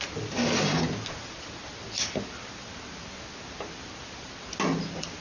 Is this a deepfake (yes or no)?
no